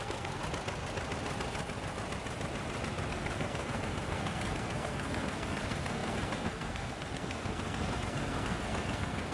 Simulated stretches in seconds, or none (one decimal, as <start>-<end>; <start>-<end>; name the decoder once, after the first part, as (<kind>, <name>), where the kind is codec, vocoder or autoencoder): 0.0-0.4 (codec, SNAC); 3.1-9.3